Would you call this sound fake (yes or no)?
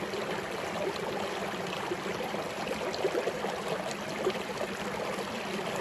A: no